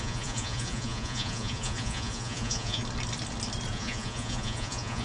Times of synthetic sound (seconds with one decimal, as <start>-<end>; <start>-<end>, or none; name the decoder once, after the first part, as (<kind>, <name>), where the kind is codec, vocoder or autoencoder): 0.0-2.8 (vocoder, Vocos); 3.7-5.0